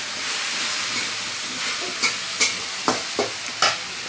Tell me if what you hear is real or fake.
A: real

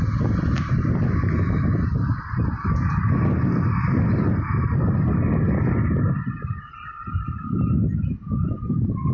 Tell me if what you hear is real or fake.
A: real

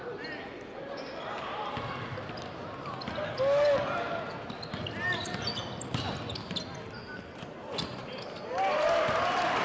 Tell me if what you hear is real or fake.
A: real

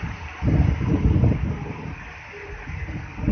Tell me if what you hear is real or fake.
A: real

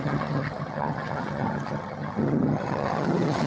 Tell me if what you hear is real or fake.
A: fake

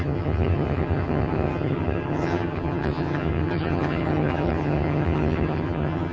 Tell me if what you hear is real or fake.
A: fake